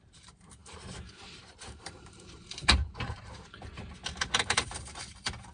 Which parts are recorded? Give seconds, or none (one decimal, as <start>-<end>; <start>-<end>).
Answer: none